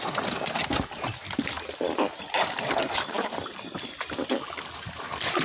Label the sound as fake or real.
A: real